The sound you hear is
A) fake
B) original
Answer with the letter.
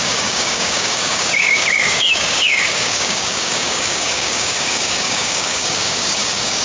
A